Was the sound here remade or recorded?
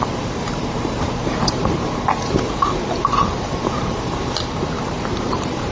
remade